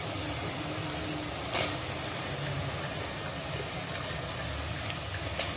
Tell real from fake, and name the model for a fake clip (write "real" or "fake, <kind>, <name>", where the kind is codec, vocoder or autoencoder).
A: real